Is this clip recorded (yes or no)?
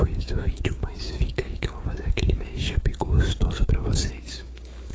no